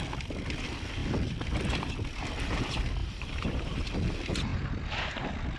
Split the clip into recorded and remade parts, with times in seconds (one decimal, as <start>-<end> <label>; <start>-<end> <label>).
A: 0.0-3.0 recorded; 3.0-3.8 remade; 3.8-5.6 recorded